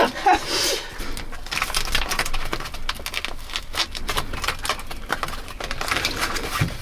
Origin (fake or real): real